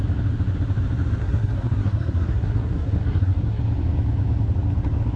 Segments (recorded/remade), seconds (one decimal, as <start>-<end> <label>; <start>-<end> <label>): 0.0-1.2 recorded; 1.2-3.6 remade; 3.6-5.2 recorded